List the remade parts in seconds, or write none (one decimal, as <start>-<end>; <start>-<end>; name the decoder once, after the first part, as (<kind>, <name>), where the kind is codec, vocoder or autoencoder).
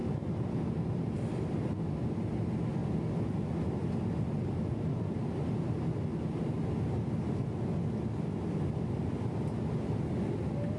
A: none